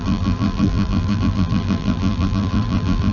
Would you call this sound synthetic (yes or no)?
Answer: yes